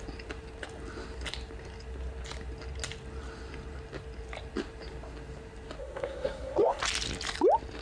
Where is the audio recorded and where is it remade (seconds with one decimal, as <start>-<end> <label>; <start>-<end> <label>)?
0.0-5.8 recorded; 5.8-6.8 remade; 6.8-7.8 recorded